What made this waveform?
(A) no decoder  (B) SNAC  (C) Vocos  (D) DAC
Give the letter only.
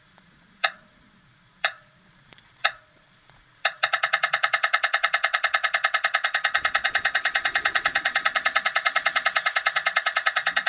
C